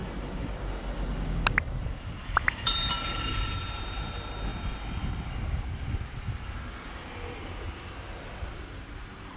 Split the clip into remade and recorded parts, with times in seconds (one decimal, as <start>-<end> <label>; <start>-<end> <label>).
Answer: 0.0-2.2 recorded; 2.2-4.5 remade; 4.5-8.6 recorded; 8.6-9.4 remade